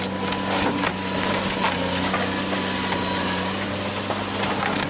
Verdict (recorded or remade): recorded